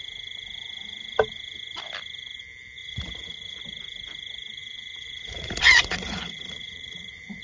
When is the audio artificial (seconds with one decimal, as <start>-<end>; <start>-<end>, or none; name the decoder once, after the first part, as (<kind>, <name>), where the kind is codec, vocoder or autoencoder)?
2.8-3.6 (vocoder, Vocos); 4.6-7.4